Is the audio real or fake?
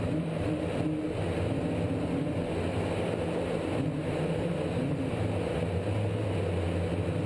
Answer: real